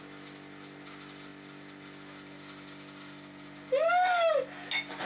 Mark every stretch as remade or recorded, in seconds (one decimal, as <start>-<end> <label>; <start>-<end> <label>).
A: 0.0-5.1 recorded